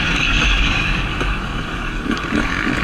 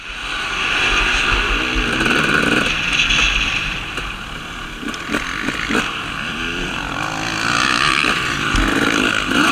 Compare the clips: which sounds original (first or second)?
second